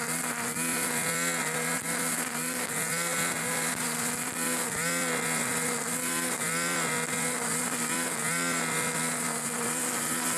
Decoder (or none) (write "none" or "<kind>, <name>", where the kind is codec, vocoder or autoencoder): none